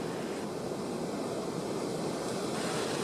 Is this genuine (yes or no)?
yes